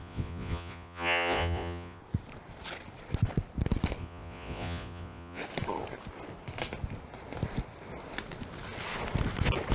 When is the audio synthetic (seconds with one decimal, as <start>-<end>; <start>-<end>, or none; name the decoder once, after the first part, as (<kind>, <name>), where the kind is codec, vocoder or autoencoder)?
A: 0.0-2.0 (vocoder, Vocos); 4.0-5.4